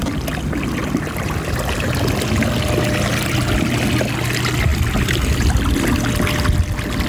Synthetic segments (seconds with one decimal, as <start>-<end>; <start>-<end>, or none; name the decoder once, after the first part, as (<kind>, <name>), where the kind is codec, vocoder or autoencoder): none